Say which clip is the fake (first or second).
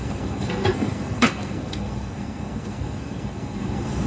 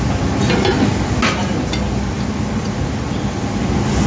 first